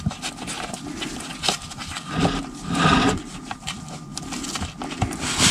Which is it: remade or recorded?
recorded